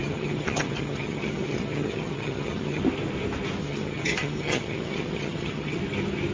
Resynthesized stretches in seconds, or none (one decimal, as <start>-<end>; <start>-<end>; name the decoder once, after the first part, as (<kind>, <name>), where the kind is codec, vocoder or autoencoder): 0.0-2.8 (vocoder, HiFi-GAN); 3.6-5.8